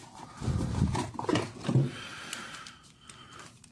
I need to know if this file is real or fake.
real